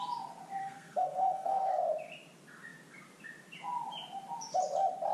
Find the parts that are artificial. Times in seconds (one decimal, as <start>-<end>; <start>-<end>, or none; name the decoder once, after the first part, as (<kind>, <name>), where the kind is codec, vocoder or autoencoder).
0.6-1.8 (codec, SNAC)